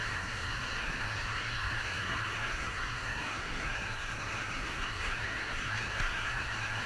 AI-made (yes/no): yes